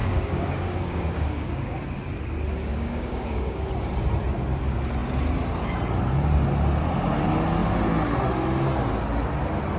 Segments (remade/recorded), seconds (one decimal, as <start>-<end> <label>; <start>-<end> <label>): 0.0-1.8 remade; 1.8-2.7 recorded; 2.7-3.7 remade; 3.7-9.8 recorded